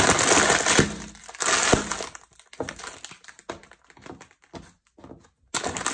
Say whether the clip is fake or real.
real